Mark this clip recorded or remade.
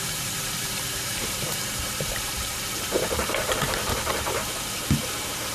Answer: remade